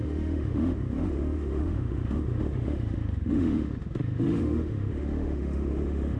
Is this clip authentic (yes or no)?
no